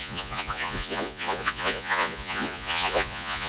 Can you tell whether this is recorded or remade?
remade